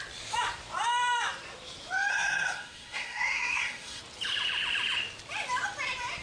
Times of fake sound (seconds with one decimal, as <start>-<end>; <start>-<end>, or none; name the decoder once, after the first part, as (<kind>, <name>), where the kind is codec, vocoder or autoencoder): 2.1-4.0 (codec, SNAC)